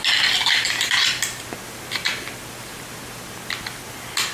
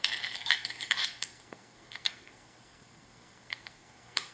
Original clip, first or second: first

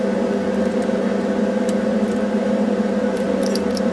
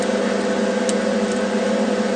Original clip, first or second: second